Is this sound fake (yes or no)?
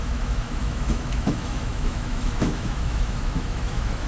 yes